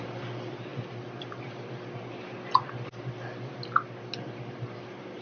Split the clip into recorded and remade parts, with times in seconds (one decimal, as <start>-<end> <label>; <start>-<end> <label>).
0.0-5.2 recorded